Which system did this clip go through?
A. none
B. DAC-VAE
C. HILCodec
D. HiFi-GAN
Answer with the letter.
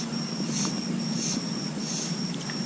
A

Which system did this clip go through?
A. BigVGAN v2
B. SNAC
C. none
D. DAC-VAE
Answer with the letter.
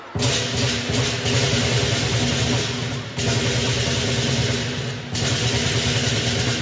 C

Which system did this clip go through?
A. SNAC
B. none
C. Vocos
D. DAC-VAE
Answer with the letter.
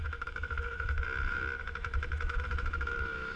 D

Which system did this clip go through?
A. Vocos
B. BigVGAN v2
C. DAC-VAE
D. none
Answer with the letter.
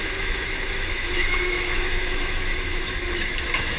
C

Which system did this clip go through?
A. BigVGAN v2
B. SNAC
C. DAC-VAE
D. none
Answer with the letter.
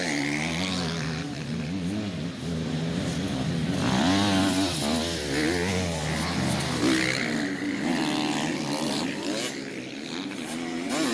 D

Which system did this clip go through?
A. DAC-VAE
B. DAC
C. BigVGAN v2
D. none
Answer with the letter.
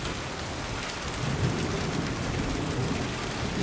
D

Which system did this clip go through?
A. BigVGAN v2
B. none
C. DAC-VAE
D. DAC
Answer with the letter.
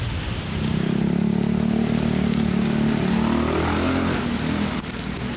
B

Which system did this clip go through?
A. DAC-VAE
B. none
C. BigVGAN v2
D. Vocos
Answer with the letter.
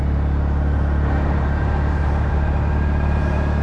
B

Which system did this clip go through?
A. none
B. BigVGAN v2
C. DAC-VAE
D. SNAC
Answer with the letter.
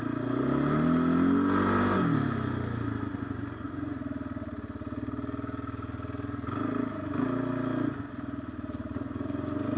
A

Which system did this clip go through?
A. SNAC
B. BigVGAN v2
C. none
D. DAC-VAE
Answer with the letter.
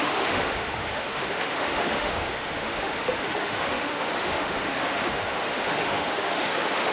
D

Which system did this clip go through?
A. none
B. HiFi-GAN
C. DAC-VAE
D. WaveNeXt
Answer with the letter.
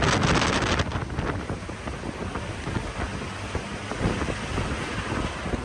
A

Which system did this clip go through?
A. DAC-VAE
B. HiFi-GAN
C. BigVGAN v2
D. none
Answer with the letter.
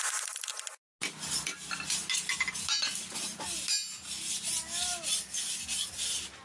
D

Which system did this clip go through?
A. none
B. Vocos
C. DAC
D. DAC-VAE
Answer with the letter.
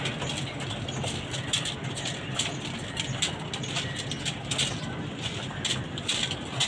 A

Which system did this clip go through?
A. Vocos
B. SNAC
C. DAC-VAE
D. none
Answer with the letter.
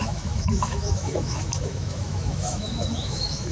C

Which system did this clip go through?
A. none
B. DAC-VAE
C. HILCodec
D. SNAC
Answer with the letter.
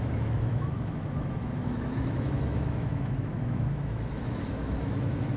B